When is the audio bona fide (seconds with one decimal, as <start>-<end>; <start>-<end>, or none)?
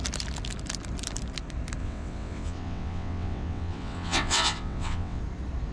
0.0-1.8; 5.2-5.7